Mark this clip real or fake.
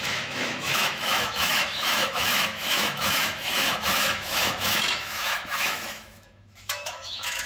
fake